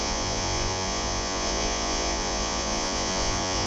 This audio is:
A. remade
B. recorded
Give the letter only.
A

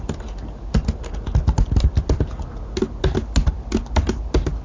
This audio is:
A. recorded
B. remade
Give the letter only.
A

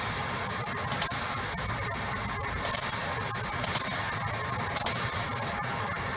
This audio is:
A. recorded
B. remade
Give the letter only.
A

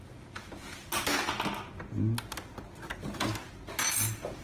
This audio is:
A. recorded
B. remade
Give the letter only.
A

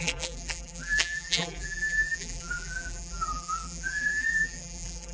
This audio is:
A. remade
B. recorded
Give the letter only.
A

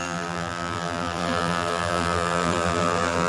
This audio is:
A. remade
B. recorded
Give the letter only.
A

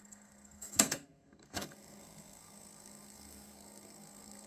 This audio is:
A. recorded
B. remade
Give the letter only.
B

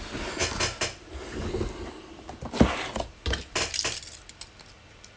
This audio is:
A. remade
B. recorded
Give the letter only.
B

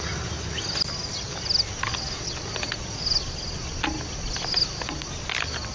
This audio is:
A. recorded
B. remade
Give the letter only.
A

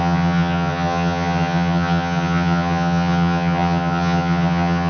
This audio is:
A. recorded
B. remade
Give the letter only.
B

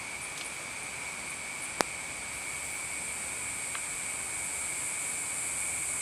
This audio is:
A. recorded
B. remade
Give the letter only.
A